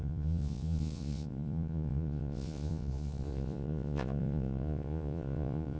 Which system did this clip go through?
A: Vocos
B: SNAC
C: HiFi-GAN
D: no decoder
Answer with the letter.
A